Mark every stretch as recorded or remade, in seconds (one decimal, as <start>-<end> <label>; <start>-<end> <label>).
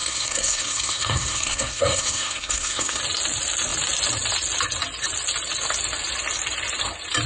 0.0-3.0 remade; 3.0-7.3 recorded